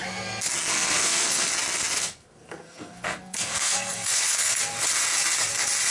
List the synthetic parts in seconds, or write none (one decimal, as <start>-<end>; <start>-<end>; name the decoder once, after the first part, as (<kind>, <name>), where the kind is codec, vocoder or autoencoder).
0.7-1.5 (codec, SNAC); 2.0-4.6